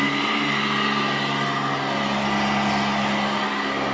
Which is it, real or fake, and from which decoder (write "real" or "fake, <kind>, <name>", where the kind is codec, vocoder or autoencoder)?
real